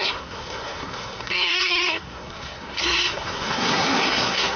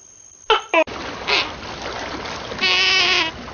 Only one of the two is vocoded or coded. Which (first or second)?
first